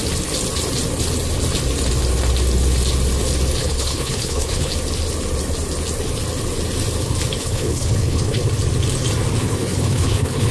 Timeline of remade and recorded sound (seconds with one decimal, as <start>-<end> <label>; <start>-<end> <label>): 0.0-3.6 recorded; 3.6-4.7 remade; 4.7-7.4 recorded; 7.4-8.4 remade; 8.4-9.4 recorded; 9.4-10.5 remade